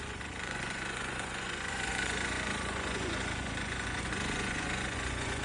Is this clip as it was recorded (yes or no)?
no